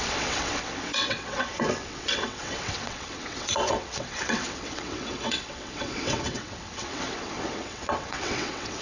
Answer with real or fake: fake